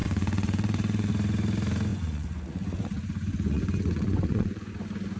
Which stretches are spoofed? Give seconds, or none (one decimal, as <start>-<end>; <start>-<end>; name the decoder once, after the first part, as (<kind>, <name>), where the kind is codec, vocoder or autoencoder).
0.0-1.1 (vocoder, Vocos); 1.9-4.7